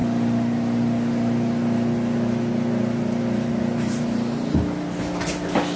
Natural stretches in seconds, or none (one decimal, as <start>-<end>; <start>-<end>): 0.0-5.8